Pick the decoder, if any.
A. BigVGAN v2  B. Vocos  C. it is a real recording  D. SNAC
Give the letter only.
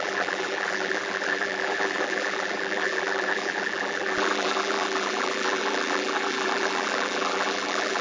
A